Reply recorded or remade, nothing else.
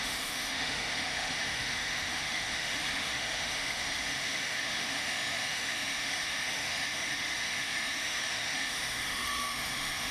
remade